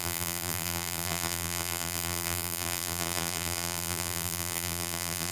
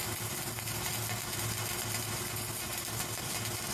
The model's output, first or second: first